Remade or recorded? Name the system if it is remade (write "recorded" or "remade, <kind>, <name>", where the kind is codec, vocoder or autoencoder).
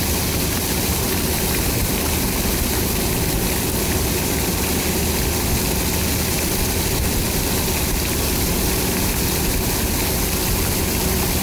recorded